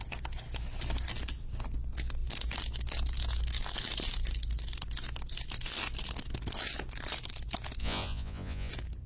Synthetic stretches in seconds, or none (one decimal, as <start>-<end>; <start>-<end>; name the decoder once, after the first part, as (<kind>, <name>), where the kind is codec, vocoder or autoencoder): 7.8-8.7 (vocoder, Vocos)

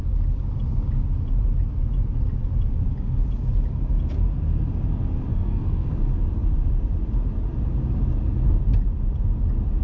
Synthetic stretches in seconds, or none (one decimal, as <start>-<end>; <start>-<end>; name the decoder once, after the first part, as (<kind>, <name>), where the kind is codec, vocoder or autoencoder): 5.3-5.9 (codec, SNAC)

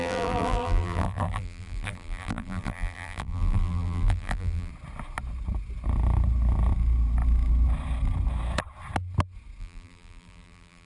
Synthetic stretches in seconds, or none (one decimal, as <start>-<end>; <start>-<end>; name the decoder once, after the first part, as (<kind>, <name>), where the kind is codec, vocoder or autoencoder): 0.0-4.7 (vocoder, BigVGAN v2); 9.6-10.9

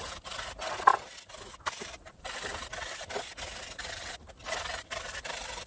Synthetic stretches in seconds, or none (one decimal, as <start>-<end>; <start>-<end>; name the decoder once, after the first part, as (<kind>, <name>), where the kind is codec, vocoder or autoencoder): none